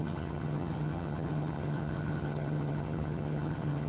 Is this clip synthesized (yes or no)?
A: yes